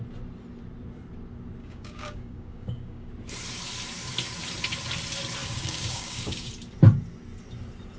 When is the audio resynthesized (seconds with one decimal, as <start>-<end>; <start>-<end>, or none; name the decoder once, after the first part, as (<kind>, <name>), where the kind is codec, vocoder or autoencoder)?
1.6-3.1 (codec, DAC); 5.4-6.5

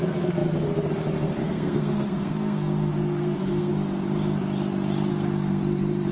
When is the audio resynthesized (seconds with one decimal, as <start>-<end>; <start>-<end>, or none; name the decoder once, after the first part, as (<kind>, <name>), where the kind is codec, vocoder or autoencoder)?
1.4-3.7 (codec, SNAC); 5.1-5.6

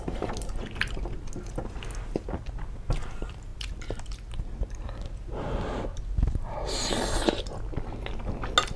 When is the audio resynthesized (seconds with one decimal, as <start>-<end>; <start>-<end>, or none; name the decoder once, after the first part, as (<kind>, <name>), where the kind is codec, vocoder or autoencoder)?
none

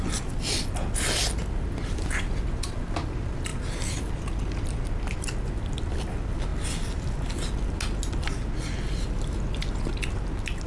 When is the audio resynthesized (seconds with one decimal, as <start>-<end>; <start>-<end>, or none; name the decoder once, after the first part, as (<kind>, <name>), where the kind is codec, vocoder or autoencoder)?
none